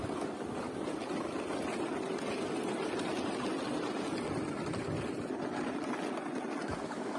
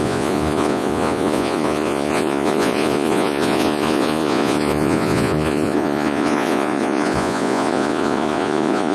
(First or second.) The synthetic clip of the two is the second